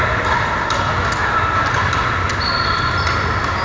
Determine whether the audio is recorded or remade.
recorded